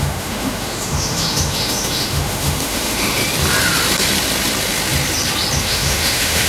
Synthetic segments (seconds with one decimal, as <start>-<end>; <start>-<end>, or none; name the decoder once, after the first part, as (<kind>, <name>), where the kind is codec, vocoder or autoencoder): 0.0-3.2 (autoencoder, DAC-VAE); 5.6-6.5